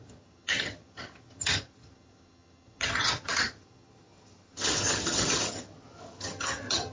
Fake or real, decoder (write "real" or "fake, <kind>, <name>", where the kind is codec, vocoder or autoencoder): fake, vocoder, HiFi-GAN